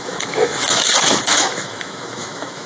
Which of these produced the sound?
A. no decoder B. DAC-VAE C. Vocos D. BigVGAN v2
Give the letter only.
B